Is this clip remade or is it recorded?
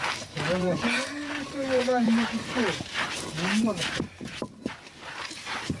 remade